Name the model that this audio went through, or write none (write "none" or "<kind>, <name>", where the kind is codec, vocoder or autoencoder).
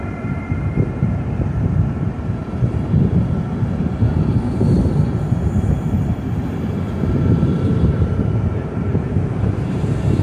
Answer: vocoder, BigVGAN v2